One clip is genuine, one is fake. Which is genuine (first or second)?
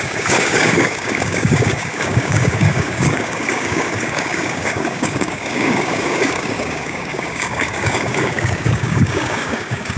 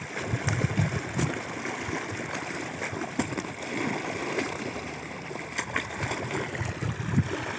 second